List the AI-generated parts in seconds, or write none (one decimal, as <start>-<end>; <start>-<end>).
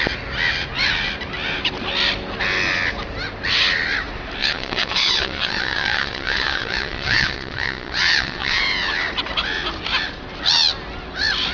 4.4-8.6